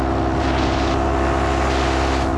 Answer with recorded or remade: recorded